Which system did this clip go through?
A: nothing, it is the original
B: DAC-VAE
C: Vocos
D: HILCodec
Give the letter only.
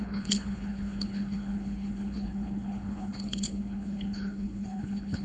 D